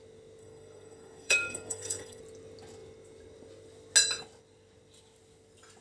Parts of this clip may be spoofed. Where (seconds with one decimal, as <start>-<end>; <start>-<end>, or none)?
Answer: 0.4-2.2